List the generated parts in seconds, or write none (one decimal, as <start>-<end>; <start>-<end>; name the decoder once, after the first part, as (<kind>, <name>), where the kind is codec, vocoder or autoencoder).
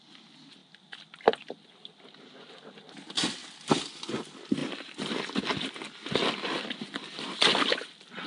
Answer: 0.6-2.0 (vocoder, BigVGAN v2)